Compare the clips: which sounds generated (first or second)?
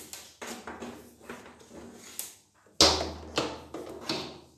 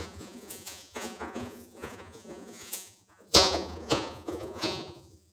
second